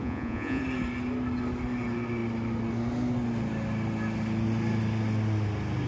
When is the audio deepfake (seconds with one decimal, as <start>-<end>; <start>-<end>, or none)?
0.0-0.6

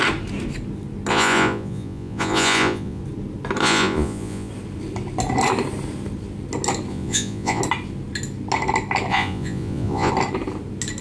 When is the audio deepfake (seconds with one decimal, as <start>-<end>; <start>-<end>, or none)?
1.1-3.0; 3.6-4.5; 6.9-7.6; 9.1-10.1

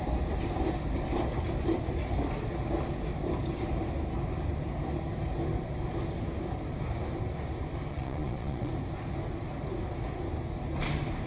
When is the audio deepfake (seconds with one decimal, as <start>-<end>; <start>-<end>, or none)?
7.9-8.7

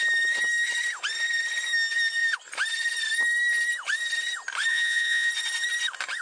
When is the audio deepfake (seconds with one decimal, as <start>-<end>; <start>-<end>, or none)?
4.7-5.3

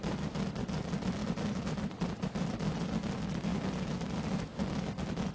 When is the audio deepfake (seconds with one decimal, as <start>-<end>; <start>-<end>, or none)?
none

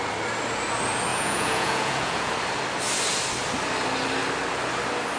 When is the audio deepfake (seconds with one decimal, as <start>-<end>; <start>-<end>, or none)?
1.1-2.3

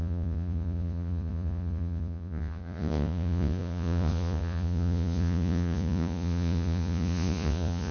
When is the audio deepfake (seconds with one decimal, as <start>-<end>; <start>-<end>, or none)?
0.0-7.9

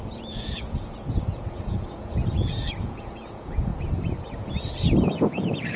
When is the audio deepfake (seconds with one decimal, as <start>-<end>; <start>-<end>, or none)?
0.0-3.7; 5.0-5.8